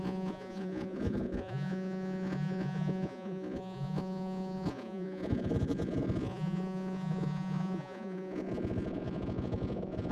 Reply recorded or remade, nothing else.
remade